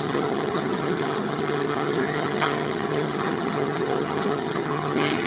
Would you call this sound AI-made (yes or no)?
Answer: yes